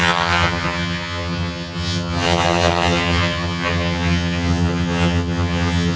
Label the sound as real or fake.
fake